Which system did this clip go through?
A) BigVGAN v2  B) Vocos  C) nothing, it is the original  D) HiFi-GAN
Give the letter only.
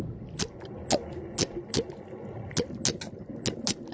C